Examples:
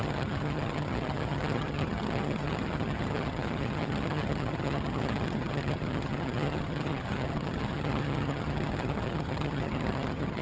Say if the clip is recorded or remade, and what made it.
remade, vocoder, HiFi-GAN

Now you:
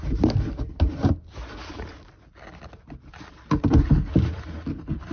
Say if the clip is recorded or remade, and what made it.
recorded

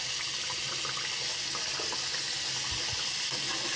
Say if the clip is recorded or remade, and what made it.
recorded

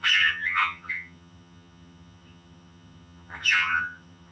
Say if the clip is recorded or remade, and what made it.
remade, vocoder, HiFi-GAN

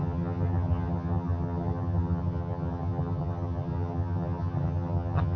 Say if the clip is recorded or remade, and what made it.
remade, vocoder, HiFi-GAN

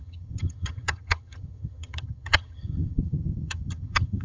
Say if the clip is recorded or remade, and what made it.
remade, vocoder, HiFi-GAN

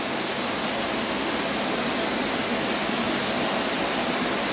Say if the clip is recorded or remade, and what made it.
recorded